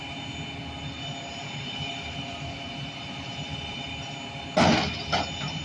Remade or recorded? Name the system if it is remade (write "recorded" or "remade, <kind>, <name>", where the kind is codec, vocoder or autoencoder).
recorded